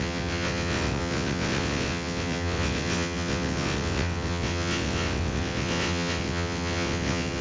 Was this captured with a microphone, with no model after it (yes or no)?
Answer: no